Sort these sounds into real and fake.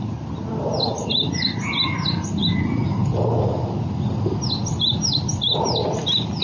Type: real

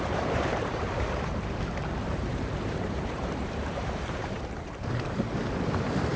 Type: fake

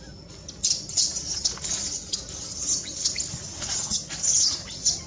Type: real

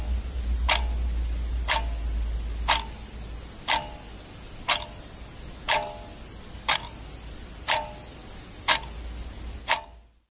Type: real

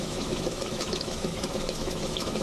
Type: fake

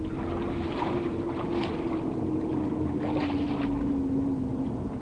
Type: real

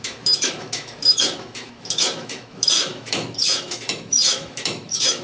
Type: fake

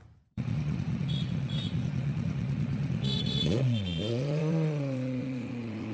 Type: fake